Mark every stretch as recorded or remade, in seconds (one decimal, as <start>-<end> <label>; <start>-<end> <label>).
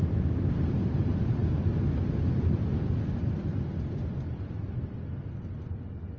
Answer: 0.0-6.2 recorded